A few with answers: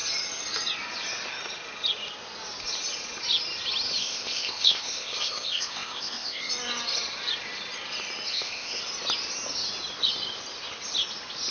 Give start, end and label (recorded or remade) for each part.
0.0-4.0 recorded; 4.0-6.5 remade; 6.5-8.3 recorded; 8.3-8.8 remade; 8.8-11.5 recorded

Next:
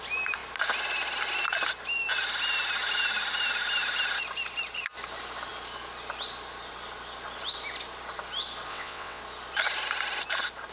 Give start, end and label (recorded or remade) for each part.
0.0-8.7 recorded; 8.7-9.2 remade; 9.2-10.7 recorded